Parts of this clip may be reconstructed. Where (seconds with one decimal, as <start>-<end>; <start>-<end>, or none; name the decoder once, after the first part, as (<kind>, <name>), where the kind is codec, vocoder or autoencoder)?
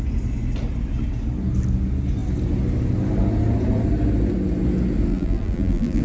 5.1-6.0 (vocoder, BigVGAN v2)